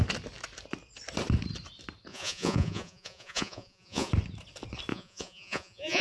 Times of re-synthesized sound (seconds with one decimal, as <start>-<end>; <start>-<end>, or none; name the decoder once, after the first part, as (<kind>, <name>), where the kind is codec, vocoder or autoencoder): 2.1-4.1 (vocoder, Vocos); 4.9-6.0